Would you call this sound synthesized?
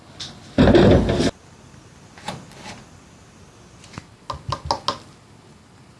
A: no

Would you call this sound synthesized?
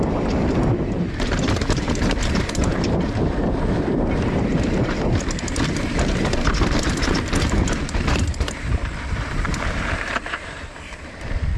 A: yes